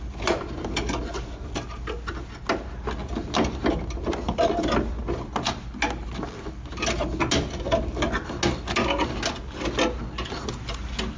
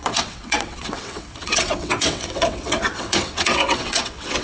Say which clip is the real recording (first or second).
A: first